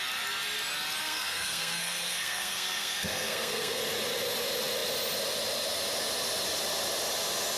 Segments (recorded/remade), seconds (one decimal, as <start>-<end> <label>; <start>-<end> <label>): 0.0-1.0 recorded; 1.0-3.8 remade; 3.8-7.6 recorded